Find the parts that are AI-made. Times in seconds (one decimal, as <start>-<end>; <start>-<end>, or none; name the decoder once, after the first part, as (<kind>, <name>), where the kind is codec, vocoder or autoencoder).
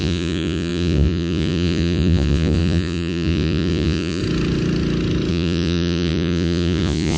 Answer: 0.0-4.2 (vocoder, Vocos); 5.3-7.2